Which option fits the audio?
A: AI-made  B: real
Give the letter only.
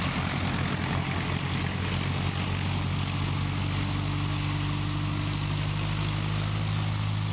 B